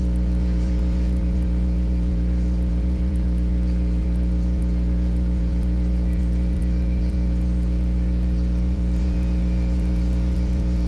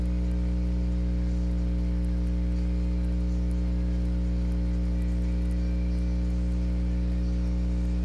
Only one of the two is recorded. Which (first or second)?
second